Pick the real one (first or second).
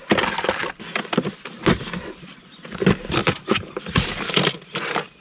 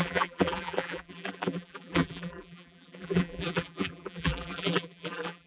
first